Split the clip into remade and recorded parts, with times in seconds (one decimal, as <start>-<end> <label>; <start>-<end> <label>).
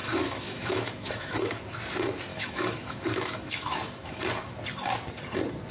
0.0-1.5 remade; 1.5-2.3 recorded; 2.3-4.2 remade; 4.2-5.7 recorded